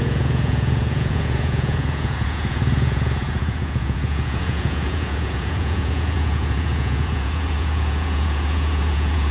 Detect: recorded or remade remade